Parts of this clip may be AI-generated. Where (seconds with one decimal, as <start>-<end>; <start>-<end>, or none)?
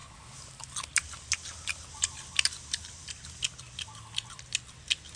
none